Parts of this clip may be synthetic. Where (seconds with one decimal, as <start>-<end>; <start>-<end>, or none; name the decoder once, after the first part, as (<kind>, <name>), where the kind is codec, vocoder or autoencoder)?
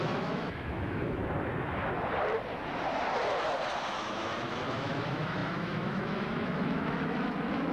0.0-1.2 (autoencoder, DAC-VAE); 3.9-7.7